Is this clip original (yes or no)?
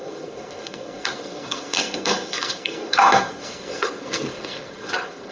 no